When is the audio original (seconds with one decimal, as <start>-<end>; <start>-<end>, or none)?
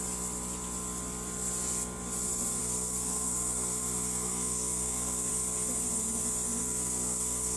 0.0-2.6; 5.3-6.6